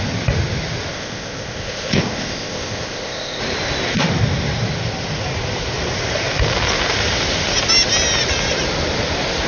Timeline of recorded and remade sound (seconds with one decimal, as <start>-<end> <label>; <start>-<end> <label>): 0.0-0.9 recorded; 0.9-3.4 remade; 3.4-9.5 recorded